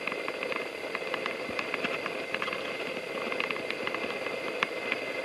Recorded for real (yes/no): yes